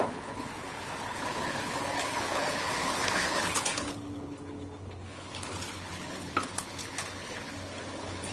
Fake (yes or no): yes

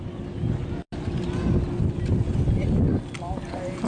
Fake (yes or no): no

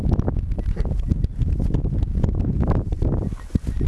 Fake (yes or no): no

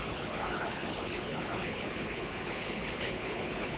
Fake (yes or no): yes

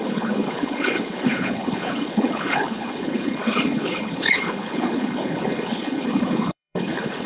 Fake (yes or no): yes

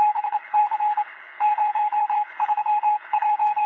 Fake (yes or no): yes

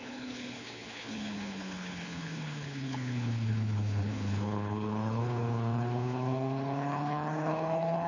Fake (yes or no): yes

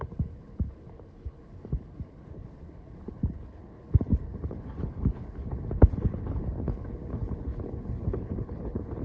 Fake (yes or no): yes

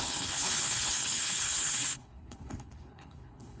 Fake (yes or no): yes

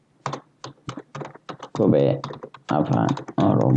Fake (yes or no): no